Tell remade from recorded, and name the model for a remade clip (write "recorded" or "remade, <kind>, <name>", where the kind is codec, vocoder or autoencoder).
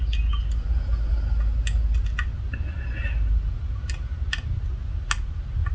recorded